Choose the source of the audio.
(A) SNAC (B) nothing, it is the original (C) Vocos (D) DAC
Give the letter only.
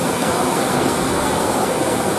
A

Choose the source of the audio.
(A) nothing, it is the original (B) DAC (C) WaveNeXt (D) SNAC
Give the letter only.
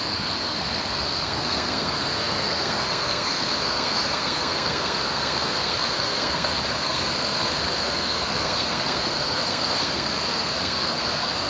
D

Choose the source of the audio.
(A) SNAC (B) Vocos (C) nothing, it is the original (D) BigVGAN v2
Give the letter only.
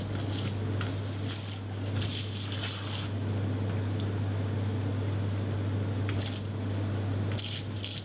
C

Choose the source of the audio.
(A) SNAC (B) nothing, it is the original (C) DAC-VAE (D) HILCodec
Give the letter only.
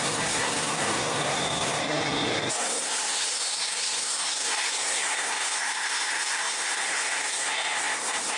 A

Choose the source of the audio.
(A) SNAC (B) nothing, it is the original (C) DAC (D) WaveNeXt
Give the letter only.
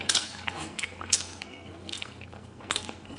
A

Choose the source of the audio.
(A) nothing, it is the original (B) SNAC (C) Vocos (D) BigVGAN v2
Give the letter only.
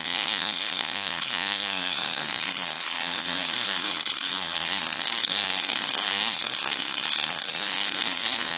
B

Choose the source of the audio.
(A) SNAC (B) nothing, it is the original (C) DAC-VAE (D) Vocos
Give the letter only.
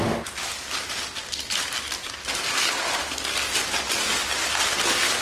B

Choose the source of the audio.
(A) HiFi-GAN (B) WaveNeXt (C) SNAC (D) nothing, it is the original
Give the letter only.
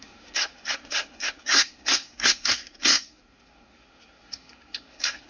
C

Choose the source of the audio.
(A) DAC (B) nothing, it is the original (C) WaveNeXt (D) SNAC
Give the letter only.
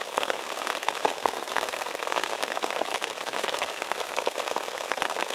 D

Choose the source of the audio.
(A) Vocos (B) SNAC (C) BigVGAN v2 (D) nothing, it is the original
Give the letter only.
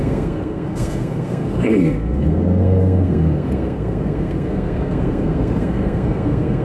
B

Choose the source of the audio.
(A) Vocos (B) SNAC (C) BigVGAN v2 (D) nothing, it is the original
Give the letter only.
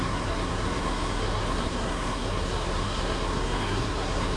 B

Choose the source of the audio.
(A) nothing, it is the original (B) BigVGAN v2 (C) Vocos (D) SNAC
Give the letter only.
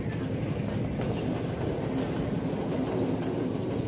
A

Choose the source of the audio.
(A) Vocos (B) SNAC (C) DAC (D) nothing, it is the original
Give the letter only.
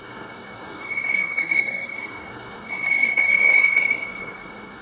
B